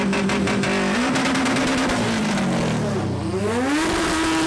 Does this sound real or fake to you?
real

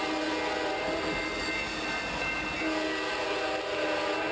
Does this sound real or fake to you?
real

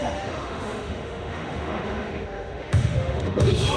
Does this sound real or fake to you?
fake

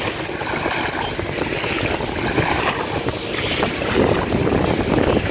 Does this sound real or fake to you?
real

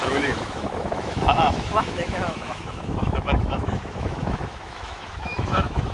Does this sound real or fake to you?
fake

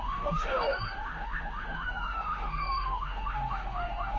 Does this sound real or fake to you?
fake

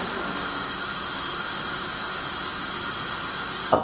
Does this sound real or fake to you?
real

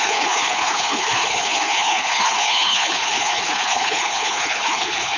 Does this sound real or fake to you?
fake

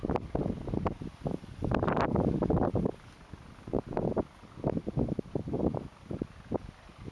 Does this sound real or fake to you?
real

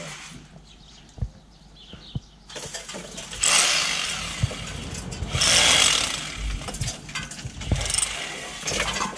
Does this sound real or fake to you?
real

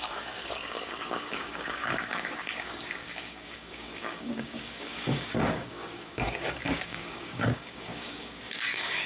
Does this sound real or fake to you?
fake